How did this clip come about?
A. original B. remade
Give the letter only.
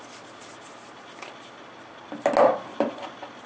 A